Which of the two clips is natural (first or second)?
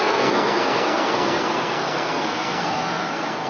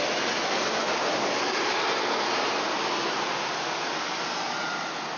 second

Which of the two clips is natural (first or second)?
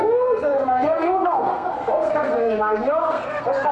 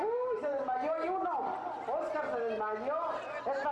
second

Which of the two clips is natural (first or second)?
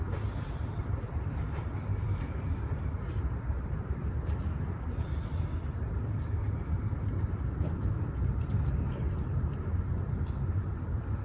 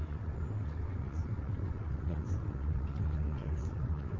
first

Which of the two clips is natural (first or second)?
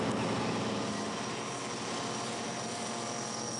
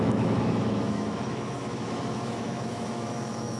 first